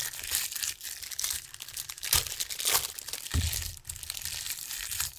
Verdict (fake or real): real